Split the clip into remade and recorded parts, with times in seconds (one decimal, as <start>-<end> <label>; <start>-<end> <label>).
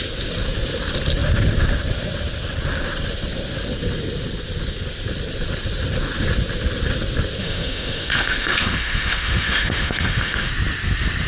0.0-7.4 recorded; 7.4-10.5 remade; 10.5-11.3 recorded